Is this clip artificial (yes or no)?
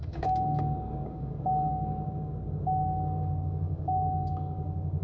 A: yes